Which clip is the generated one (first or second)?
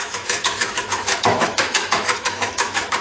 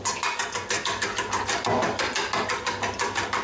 first